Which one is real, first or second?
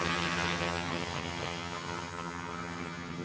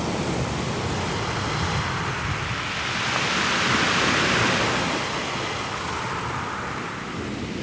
second